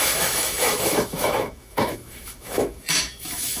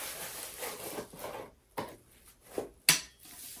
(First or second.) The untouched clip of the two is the second